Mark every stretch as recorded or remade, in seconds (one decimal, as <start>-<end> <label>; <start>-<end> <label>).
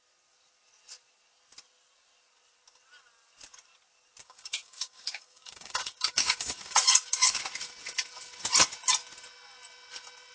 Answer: 0.0-4.2 recorded; 4.2-7.4 remade; 7.4-10.3 recorded